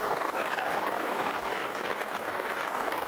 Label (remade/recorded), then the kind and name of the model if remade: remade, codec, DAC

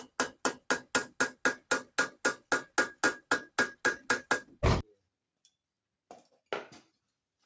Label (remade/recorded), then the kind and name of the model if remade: recorded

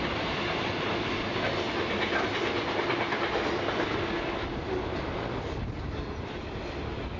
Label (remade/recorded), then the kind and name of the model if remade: recorded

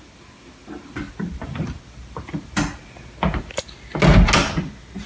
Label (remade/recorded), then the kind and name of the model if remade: recorded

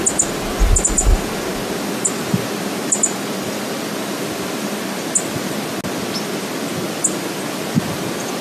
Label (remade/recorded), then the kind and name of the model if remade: recorded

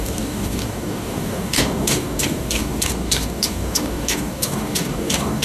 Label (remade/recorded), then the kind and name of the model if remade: remade, codec, DAC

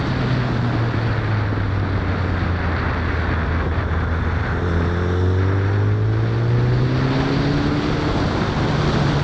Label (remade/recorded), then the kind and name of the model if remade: recorded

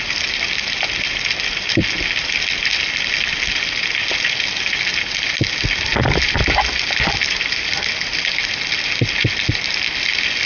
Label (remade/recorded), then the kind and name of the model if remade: recorded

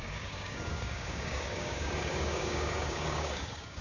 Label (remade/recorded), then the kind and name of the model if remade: remade, codec, DAC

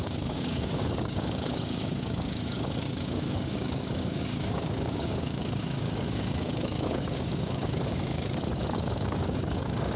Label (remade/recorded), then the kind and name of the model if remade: remade, codec, DAC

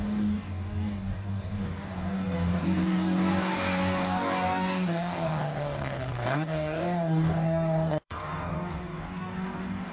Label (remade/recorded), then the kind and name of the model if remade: remade, codec, DAC